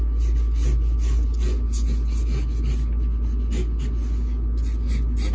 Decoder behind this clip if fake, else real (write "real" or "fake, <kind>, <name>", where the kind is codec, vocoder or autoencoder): real